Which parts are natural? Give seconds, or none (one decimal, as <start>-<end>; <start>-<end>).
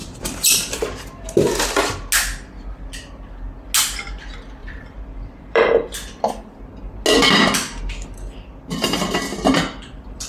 0.8-4.6; 5.7-10.3